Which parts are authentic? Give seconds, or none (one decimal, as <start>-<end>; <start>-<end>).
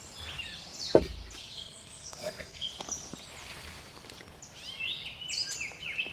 0.0-1.4; 2.7-6.1